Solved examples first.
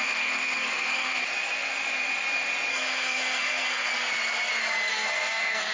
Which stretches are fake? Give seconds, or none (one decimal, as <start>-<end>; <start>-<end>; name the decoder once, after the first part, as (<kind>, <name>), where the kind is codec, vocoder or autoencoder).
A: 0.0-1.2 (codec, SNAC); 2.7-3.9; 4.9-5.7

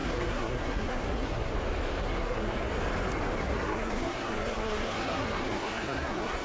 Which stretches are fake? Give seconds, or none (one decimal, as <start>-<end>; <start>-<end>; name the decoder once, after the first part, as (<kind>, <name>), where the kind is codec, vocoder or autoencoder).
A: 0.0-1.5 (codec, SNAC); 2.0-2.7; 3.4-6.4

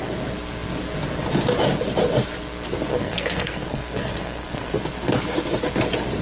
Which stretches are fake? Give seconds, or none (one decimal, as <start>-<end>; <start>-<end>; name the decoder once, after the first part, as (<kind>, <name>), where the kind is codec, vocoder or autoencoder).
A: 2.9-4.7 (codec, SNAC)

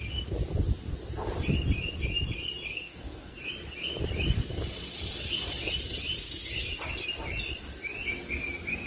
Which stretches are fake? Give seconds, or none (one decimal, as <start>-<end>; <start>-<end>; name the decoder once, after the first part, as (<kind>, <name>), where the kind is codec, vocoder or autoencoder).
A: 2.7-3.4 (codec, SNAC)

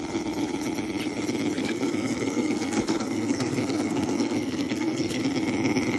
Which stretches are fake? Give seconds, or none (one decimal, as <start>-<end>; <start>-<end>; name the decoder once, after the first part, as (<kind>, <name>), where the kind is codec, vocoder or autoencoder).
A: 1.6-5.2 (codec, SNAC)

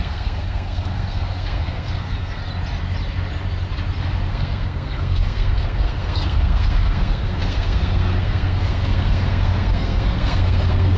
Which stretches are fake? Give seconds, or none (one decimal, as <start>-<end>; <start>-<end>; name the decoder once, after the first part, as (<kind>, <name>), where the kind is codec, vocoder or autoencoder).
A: 0.0-2.4 (codec, SNAC); 4.3-11.0

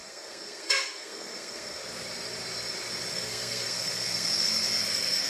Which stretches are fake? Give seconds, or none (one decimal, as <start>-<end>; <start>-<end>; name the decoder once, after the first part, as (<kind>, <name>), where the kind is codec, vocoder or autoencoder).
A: 0.0-1.8 (codec, SNAC); 3.1-5.3